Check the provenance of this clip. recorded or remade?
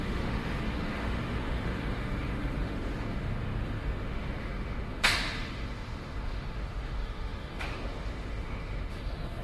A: remade